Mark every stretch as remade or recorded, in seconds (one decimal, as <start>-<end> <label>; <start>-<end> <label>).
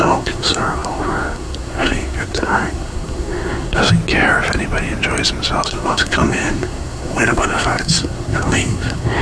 0.0-3.8 remade; 3.8-5.7 recorded; 5.7-9.2 remade